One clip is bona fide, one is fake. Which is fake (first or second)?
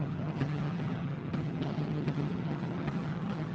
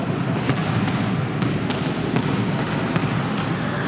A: first